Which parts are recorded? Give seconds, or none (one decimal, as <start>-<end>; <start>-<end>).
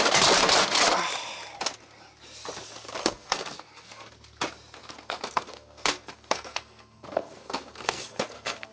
0.0-3.0; 4.1-4.8